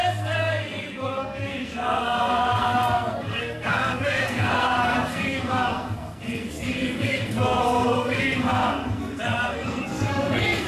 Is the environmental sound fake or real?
fake